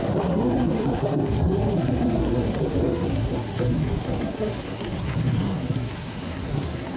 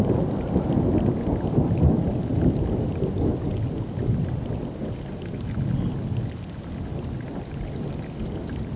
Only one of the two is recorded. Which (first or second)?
second